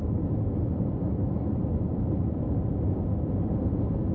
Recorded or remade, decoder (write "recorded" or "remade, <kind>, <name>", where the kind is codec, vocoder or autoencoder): recorded